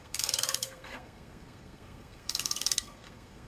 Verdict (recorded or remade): remade